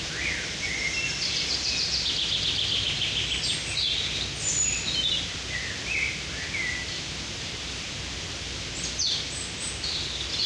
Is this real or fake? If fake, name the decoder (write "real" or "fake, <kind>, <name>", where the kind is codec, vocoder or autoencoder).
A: real